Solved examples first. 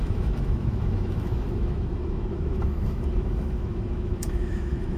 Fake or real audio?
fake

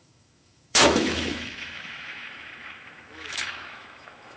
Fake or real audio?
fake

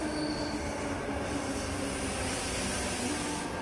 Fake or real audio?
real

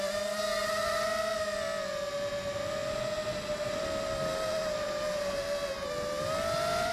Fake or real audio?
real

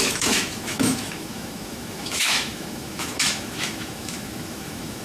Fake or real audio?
fake